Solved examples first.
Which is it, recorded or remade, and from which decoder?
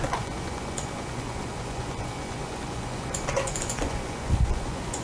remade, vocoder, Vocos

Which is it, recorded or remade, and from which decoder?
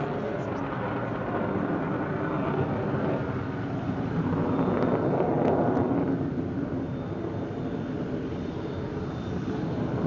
recorded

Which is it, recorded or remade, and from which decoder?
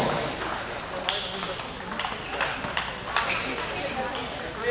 recorded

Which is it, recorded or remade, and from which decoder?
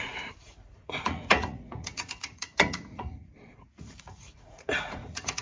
remade, vocoder, Vocos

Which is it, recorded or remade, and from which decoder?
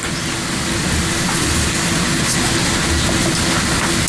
recorded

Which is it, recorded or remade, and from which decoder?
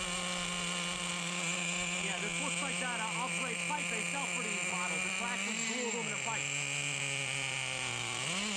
recorded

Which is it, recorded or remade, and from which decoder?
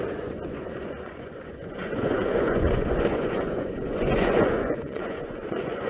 remade, vocoder, Vocos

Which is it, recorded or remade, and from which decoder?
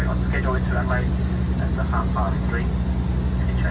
recorded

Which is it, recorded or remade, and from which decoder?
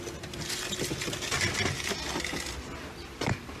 recorded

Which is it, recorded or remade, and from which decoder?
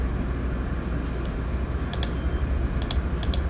recorded